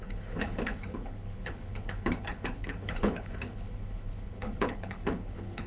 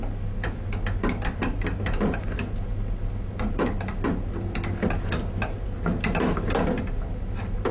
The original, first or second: second